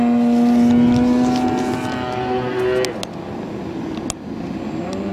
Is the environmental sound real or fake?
real